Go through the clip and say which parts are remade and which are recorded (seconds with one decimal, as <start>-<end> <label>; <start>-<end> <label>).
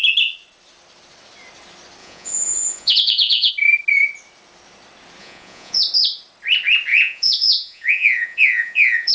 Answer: 0.0-2.0 recorded; 2.0-3.5 remade; 3.5-5.2 recorded; 5.2-5.8 remade; 5.8-6.9 recorded; 6.9-9.1 remade